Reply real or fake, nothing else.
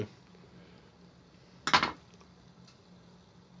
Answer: real